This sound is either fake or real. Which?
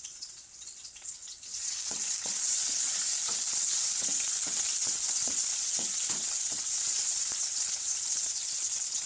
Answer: fake